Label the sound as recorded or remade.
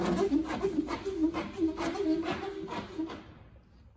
recorded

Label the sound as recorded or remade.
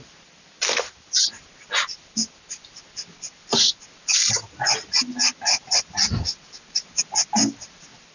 recorded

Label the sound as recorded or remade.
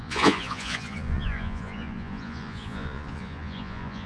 remade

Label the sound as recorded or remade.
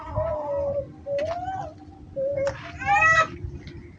recorded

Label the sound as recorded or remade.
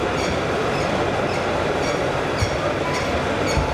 recorded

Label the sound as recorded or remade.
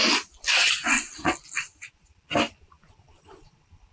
recorded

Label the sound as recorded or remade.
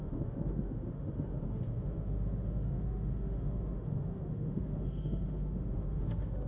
remade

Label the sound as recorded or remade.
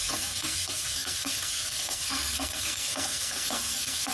remade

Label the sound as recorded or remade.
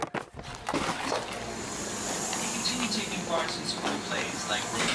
recorded